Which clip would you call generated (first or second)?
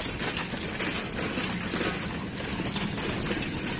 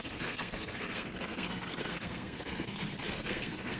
second